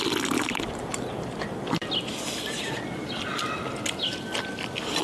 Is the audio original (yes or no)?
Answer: yes